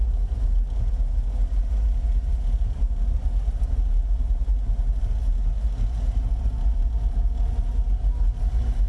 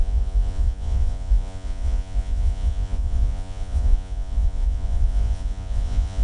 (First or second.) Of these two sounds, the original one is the first